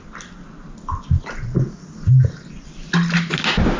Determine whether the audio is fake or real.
real